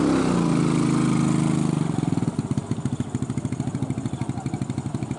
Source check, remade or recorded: recorded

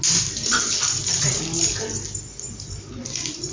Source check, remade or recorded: recorded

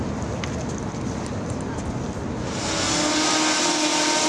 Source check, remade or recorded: recorded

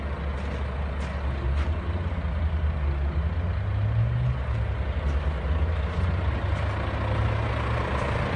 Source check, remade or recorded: recorded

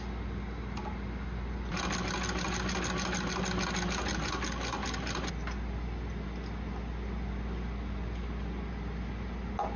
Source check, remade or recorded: recorded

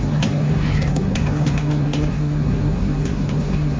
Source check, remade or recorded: remade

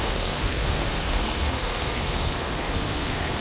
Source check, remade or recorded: remade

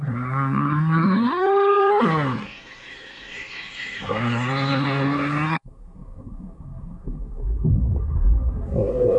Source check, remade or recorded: remade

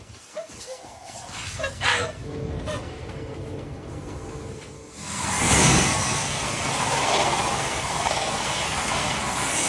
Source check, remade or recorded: remade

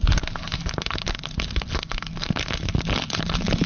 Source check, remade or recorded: recorded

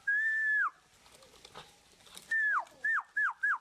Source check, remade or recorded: recorded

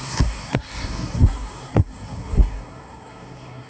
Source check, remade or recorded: remade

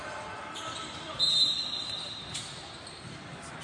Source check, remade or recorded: recorded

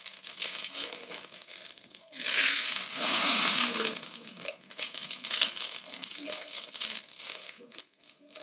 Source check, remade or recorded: remade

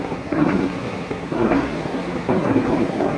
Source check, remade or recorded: remade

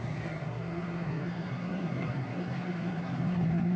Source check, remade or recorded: remade